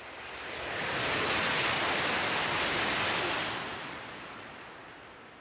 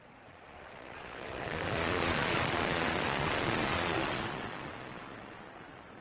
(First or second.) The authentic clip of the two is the first